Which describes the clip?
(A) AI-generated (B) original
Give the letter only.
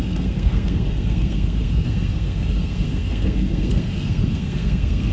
A